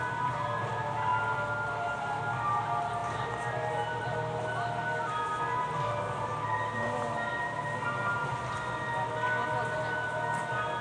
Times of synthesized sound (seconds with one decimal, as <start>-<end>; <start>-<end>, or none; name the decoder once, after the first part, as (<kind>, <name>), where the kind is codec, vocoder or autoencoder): none